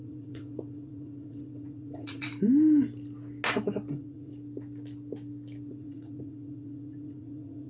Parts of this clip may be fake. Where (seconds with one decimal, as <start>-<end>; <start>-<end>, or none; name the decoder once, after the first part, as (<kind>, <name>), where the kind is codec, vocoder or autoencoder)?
0.0-2.3 (vocoder, WaveNeXt); 3.9-4.3; 5.7-7.7